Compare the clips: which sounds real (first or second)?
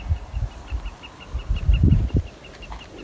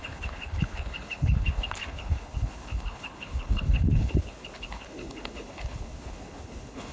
first